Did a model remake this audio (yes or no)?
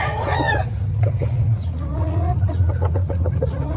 yes